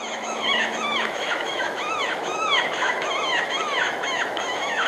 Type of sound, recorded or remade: remade